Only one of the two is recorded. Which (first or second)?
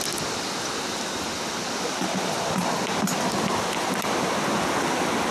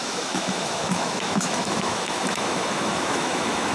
first